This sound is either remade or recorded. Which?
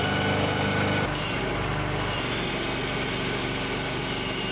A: recorded